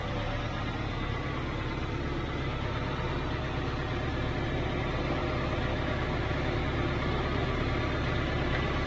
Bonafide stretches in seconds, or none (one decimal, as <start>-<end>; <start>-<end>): 0.0-5.7; 6.6-8.9